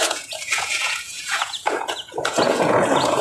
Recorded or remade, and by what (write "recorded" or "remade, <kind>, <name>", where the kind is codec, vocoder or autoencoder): remade, vocoder, Vocos